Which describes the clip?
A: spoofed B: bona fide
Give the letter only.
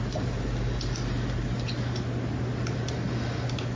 B